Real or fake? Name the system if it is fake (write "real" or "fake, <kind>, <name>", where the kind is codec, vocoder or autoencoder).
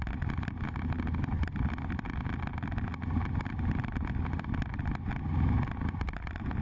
real